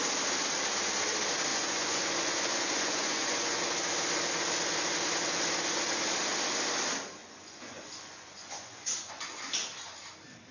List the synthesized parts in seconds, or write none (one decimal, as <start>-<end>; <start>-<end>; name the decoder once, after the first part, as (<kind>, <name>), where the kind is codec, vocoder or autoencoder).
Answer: 1.5-3.6 (vocoder, Vocos); 7.2-9.4